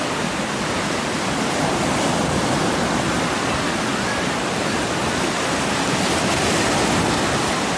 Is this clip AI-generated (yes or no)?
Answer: no